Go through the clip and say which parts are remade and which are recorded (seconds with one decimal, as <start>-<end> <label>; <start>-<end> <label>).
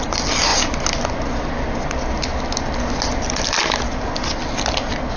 0.0-5.2 recorded